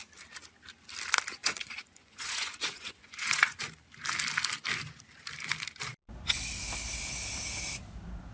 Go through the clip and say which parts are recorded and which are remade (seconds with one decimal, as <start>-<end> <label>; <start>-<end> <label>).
0.0-1.4 recorded; 1.4-3.6 remade; 3.6-8.3 recorded